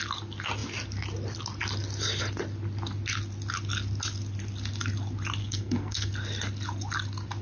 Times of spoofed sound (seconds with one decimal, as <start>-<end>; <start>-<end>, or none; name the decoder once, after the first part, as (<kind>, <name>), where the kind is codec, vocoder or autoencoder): 5.4-6.1 (codec, SNAC)